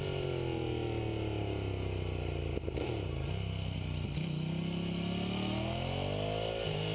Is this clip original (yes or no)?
yes